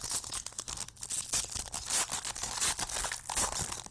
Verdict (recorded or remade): recorded